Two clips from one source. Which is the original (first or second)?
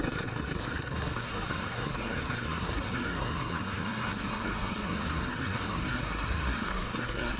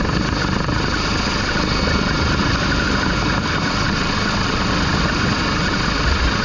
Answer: second